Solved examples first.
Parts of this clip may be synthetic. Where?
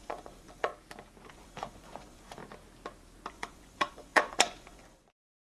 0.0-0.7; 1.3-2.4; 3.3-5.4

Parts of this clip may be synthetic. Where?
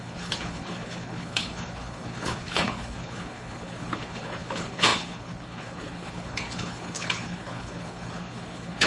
0.0-8.9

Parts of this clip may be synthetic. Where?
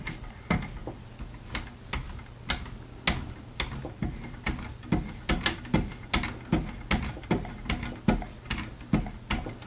none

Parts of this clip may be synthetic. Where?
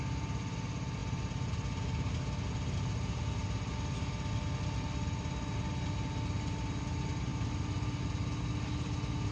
none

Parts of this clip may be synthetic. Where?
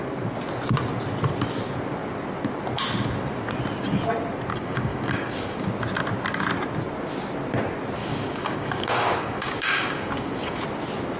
4.5-5.7; 8.0-10.6